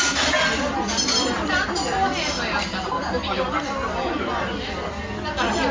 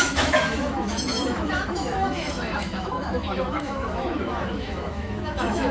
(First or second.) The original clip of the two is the first